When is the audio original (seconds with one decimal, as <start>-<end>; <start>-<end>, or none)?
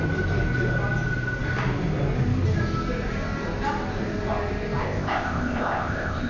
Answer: 0.0-4.8